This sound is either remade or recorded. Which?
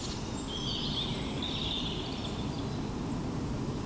recorded